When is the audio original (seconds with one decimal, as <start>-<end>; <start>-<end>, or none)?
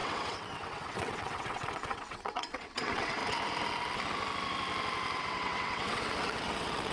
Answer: 3.2-5.2